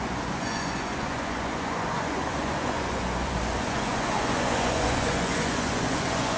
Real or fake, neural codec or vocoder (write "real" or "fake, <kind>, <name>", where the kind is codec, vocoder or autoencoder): fake, vocoder, Vocos